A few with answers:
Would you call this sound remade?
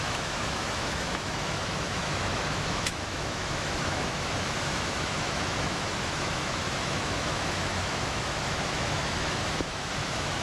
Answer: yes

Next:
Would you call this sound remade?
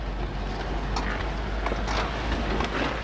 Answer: no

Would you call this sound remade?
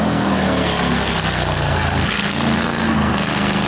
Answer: yes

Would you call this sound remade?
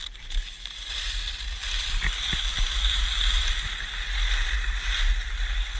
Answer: no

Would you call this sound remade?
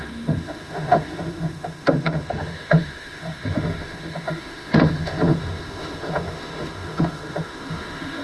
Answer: yes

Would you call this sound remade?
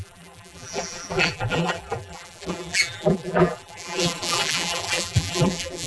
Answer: yes